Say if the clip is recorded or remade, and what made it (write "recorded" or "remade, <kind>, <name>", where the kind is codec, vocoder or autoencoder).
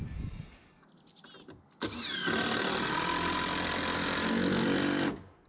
recorded